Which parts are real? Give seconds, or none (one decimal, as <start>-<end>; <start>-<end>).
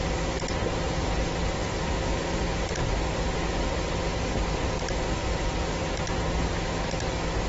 0.0-7.5